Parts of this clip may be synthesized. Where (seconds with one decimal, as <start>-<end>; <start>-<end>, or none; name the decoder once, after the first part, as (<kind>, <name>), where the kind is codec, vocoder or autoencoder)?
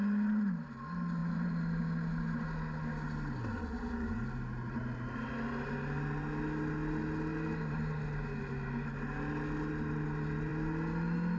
none